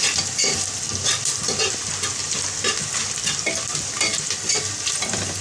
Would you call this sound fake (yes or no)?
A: no